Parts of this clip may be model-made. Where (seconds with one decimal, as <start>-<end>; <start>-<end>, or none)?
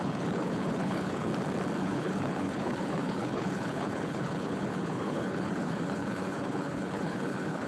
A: 0.0-1.3; 1.8-7.7